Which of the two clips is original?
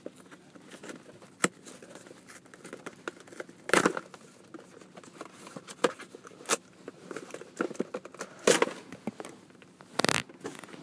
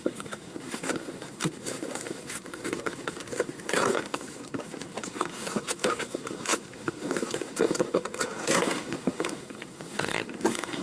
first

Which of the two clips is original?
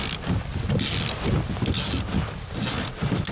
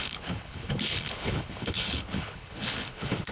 first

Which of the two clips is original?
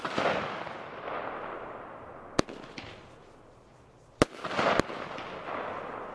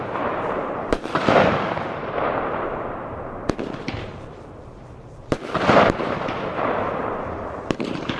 first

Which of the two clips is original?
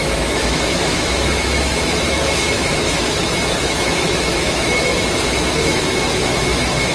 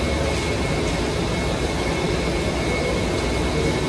second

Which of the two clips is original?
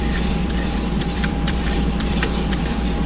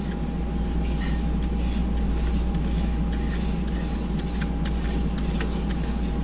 second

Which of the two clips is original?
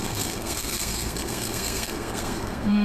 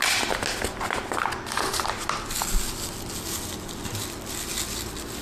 second